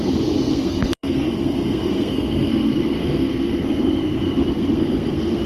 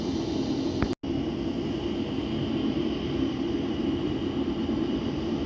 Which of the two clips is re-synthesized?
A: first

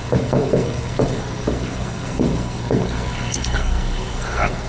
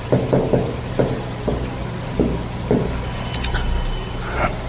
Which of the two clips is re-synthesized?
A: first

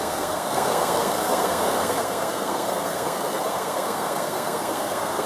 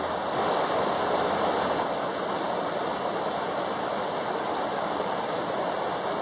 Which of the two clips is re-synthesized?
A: first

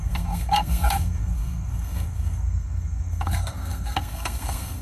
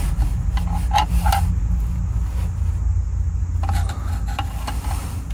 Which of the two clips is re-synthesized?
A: first